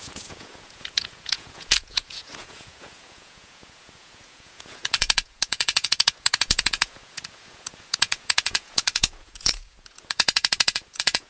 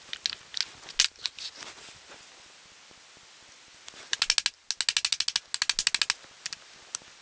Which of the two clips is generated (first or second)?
first